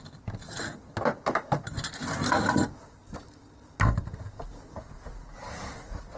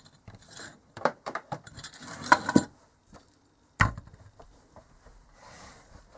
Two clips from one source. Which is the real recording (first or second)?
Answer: first